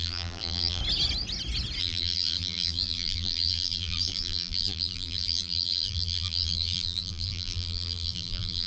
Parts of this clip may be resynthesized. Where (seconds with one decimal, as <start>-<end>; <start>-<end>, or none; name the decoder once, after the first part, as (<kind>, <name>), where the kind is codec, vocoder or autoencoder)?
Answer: 0.0-0.8 (vocoder, BigVGAN v2); 1.8-8.7